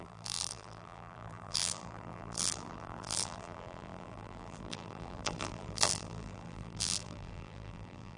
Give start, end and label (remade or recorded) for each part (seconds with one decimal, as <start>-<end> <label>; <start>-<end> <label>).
0.0-8.2 remade